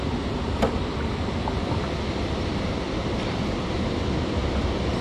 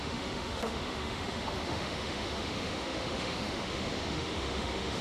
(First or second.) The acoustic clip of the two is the first